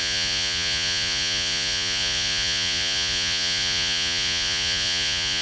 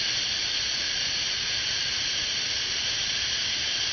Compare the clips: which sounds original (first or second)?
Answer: second